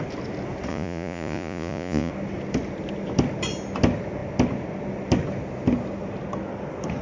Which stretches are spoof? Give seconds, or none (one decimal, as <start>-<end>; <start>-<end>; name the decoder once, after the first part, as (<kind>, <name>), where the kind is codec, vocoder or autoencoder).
0.7-2.1 (vocoder, Vocos)